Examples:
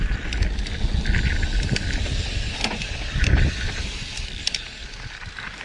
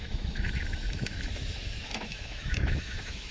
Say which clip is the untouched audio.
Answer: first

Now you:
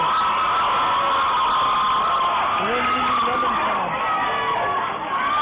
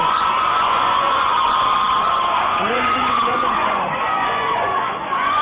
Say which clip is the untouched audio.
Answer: first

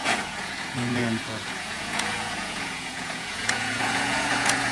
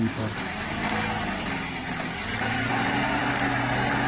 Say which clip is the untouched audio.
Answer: second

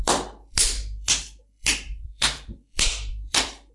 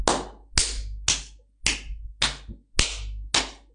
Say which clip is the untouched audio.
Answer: second